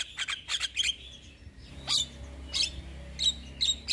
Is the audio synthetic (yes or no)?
no